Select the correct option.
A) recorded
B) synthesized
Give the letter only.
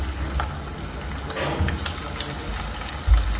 A